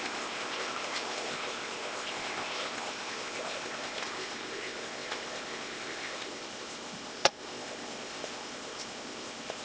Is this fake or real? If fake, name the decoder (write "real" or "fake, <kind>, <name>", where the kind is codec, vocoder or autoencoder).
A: fake, codec, ZipCodec